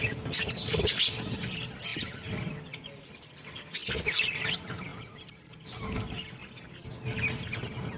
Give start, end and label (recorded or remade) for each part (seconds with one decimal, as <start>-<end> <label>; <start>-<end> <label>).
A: 0.0-4.9 recorded; 4.9-5.8 remade; 5.8-6.4 recorded; 6.4-6.9 remade; 6.9-8.0 recorded